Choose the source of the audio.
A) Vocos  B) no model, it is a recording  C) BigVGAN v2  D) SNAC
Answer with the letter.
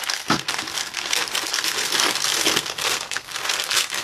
D